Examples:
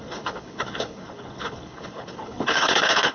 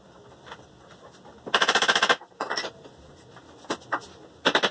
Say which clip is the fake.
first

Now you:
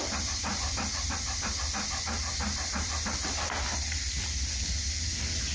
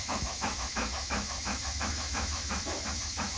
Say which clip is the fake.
second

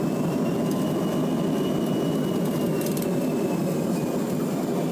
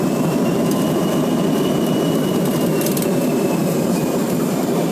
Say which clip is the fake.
second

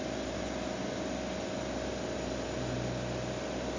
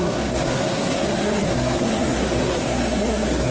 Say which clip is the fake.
second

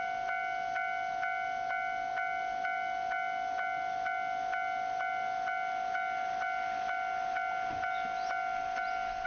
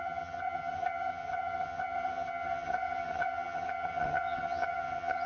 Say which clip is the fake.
second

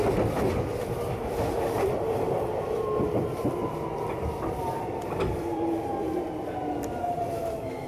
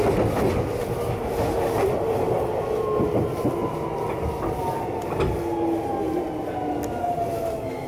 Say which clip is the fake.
first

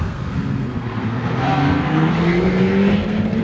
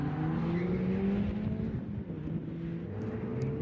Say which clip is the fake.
first